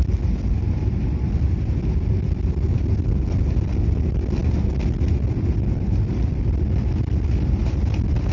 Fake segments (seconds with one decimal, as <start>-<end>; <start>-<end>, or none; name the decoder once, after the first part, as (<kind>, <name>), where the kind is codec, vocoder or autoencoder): none